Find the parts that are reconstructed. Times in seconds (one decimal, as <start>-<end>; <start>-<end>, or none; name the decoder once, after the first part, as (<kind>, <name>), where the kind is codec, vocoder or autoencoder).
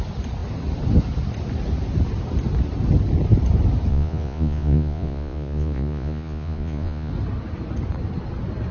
3.9-7.1 (vocoder, Vocos)